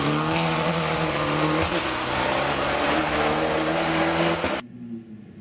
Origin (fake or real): real